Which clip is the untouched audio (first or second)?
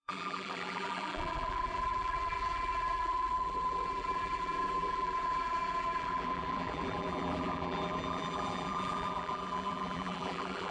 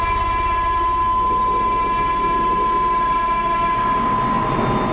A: second